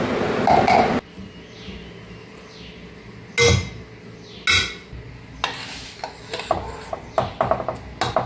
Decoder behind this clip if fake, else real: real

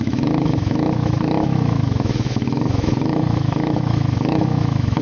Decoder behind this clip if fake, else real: fake, autoencoder, DAC-VAE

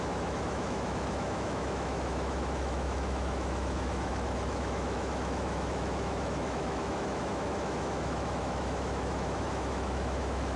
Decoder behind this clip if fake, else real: fake, autoencoder, DAC-VAE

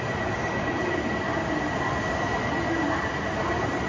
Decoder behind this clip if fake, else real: real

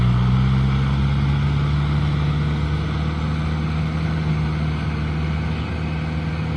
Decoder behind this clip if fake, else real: real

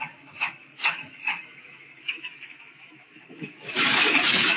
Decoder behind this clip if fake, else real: fake, autoencoder, DAC-VAE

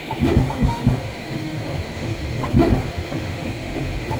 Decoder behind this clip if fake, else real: fake, autoencoder, DAC-VAE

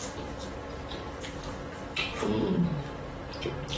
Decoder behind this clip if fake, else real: real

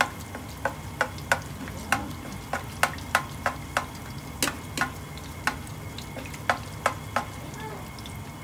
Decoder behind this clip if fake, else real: real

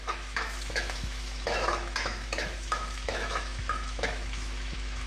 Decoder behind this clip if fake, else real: fake, autoencoder, DAC-VAE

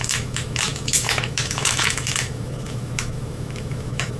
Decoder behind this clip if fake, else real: fake, autoencoder, DAC-VAE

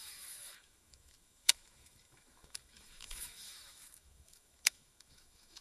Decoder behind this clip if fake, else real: fake, autoencoder, DAC-VAE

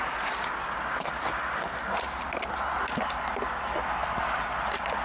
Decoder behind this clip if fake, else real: real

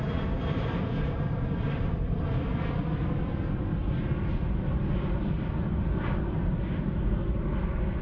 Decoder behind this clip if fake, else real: real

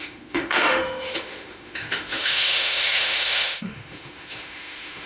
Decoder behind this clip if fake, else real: fake, autoencoder, DAC-VAE